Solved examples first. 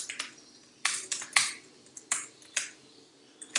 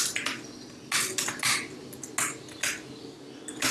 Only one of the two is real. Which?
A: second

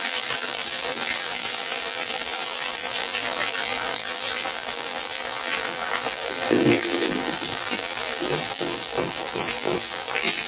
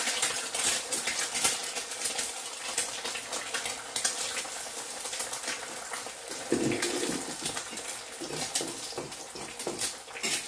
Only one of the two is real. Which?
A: second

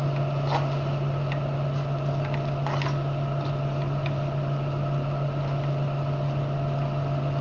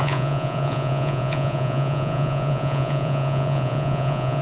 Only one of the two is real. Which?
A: first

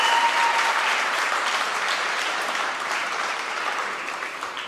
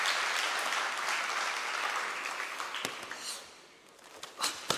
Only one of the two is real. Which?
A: second